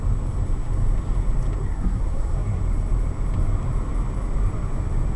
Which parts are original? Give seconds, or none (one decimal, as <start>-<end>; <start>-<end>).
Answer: 0.0-1.6; 2.6-5.2